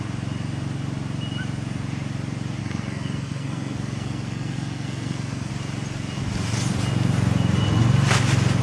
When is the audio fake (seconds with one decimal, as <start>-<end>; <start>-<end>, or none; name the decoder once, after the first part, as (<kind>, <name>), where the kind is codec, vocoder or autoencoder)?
2.6-5.5 (codec, SNAC)